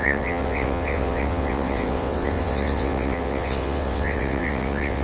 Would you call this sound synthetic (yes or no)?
yes